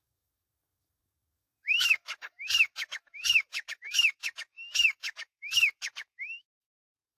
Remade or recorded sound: remade